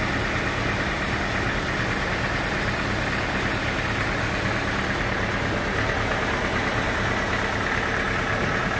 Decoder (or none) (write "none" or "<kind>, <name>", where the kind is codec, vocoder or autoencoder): none